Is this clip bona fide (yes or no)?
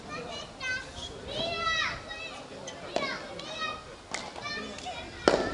yes